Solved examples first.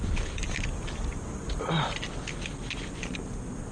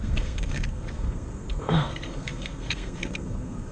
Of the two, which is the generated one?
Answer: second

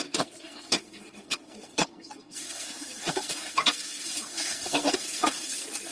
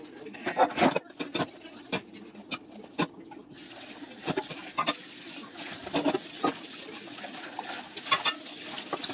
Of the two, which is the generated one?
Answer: first